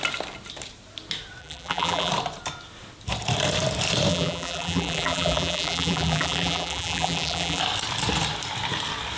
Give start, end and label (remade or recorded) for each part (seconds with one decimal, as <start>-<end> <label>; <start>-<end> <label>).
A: 0.0-1.4 recorded; 1.4-2.1 remade; 2.1-4.1 recorded; 4.1-7.6 remade; 7.6-9.2 recorded